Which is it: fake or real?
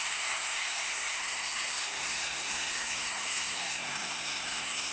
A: fake